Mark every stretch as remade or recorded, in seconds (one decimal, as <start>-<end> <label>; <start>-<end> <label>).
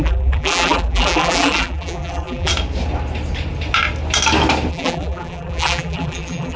0.0-2.5 remade; 2.5-4.7 recorded; 4.7-6.6 remade